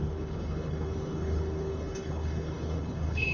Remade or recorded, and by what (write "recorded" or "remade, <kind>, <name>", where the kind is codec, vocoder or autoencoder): remade, codec, HILCodec